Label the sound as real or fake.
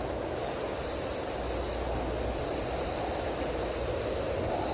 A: real